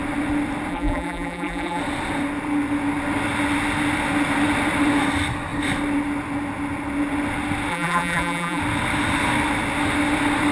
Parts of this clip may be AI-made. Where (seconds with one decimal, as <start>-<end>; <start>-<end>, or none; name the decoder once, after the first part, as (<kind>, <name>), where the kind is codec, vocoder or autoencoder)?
0.7-1.8 (vocoder, BigVGAN v2); 7.7-8.6

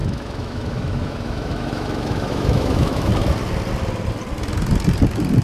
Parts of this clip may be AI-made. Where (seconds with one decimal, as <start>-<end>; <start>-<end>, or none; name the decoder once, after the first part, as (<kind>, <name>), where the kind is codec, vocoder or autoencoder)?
0.0-3.1 (autoencoder, DAC-VAE)

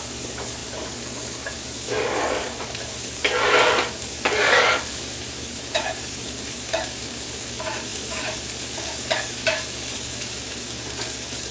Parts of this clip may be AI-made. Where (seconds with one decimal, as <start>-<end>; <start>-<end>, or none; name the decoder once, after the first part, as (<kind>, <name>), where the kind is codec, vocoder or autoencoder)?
0.0-11.5 (codec, DAC)

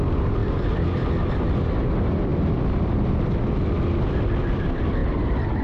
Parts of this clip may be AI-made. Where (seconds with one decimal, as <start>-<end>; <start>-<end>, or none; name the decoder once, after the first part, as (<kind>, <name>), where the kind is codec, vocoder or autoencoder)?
none